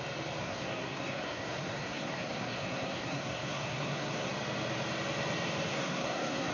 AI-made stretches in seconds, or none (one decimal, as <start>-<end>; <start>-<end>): 0.4-4.3; 5.7-6.5